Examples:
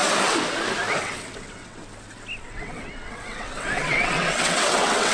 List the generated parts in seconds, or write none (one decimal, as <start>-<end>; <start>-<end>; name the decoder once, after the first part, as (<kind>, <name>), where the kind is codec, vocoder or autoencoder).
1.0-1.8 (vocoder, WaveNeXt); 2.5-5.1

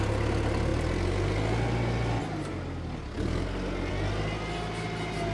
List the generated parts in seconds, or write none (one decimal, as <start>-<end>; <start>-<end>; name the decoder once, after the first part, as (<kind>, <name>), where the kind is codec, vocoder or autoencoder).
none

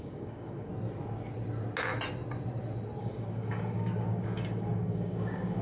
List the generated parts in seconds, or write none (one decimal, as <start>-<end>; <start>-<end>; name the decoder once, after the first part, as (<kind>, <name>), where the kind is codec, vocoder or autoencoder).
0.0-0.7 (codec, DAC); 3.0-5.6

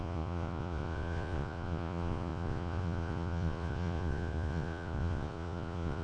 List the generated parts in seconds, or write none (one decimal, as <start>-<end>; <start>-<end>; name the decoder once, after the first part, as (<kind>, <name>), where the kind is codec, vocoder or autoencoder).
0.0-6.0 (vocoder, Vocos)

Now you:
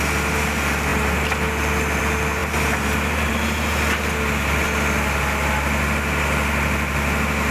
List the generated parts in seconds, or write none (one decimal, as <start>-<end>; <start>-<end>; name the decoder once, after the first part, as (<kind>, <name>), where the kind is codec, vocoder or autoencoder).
none